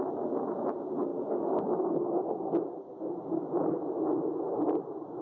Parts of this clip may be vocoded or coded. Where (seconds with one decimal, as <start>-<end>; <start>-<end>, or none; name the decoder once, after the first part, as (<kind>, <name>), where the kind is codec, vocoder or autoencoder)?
1.1-2.3 (codec, DAC)